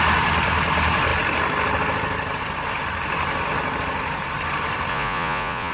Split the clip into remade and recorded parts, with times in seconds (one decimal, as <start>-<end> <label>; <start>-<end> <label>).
0.0-4.9 recorded; 4.9-5.7 remade